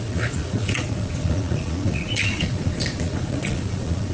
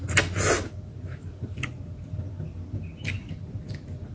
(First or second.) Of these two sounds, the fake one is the first